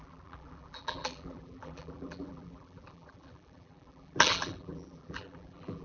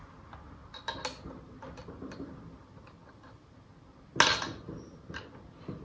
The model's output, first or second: first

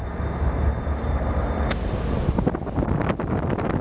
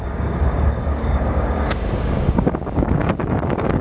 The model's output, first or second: second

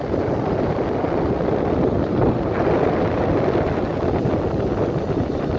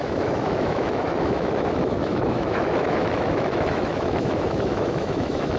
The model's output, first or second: second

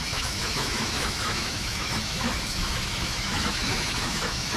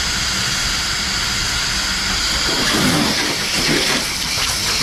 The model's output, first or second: first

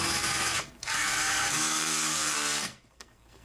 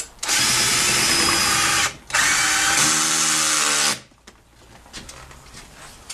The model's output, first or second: first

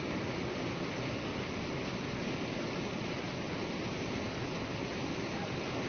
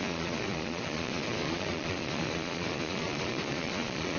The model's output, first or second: second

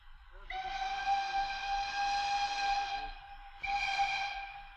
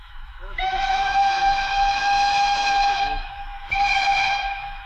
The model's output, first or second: second